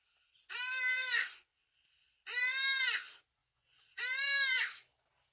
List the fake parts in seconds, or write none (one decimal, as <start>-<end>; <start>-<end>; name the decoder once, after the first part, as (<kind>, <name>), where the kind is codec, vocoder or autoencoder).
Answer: 3.4-4.0 (vocoder, Vocos)